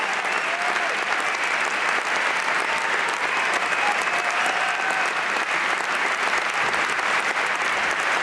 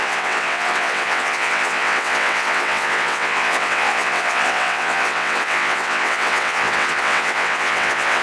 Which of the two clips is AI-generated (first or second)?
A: second